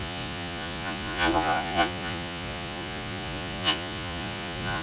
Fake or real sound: fake